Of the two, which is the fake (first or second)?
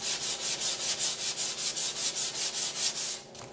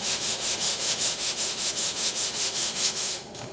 second